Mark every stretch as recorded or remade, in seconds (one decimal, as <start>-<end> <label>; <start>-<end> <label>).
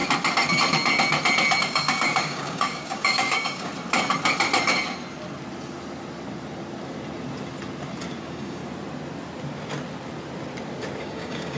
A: 0.0-1.6 recorded; 1.6-3.7 remade; 3.7-8.2 recorded; 8.2-8.6 remade; 8.6-11.0 recorded; 11.0-11.6 remade